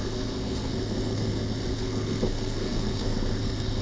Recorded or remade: remade